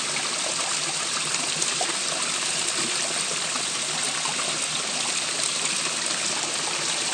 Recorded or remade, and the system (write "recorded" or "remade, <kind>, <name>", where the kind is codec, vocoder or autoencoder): recorded